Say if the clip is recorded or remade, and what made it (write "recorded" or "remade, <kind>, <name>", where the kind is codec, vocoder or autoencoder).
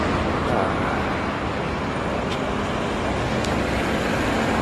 recorded